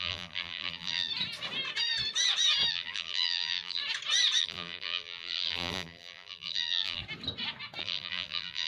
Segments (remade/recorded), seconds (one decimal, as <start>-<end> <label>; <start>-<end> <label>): 0.0-1.1 remade; 1.1-2.7 recorded; 2.7-3.8 remade; 3.8-4.4 recorded; 4.4-7.0 remade; 7.0-7.8 recorded; 7.8-8.7 remade